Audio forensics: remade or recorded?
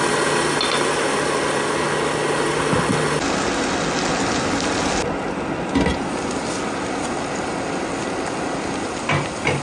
recorded